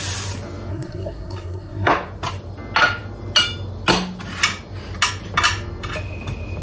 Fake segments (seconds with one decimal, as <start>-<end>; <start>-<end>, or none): 0.7-1.9